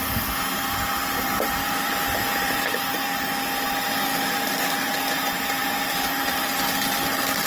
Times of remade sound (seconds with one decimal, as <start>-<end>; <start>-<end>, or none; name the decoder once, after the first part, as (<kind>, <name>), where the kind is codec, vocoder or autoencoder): 1.0-2.9 (vocoder, BigVGAN v2); 5.6-6.4